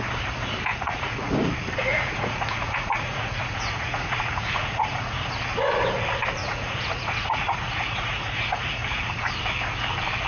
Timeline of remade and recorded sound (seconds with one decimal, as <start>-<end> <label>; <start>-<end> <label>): 0.0-0.7 recorded; 0.7-1.3 remade; 1.3-1.9 recorded; 1.9-5.3 remade; 5.3-6.4 recorded; 6.4-9.3 remade; 9.3-10.3 recorded